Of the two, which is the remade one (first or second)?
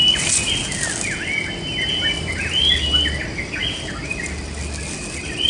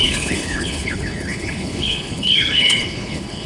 second